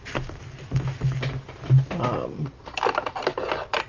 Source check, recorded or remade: recorded